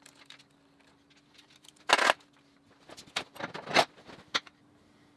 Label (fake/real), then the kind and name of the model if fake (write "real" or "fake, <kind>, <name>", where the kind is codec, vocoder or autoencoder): real